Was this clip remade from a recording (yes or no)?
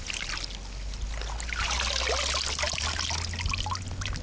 no